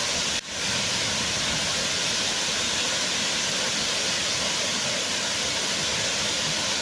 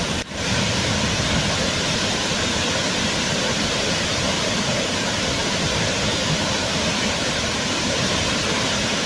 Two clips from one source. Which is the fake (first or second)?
second